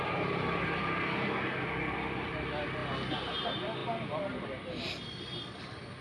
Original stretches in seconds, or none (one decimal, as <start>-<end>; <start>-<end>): 0.0-6.0